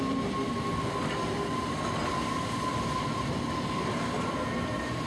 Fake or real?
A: real